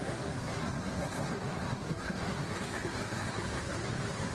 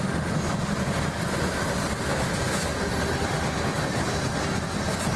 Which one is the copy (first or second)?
first